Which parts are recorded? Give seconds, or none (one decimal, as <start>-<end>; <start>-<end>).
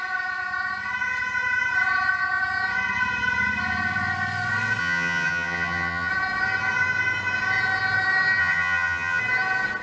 0.0-4.8; 6.1-8.4; 9.2-9.8